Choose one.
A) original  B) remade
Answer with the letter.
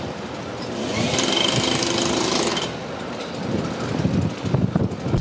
A